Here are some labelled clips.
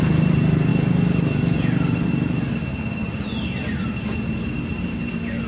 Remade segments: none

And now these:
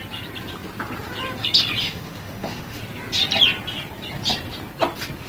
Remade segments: 1.8-2.8

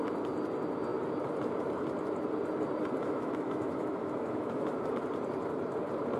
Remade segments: 3.0-4.7

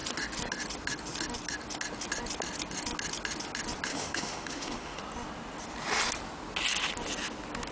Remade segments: 3.9-5.0

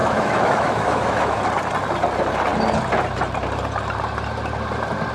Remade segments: 0.0-1.4

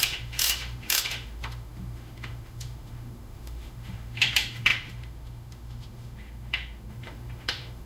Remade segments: 0.0-7.9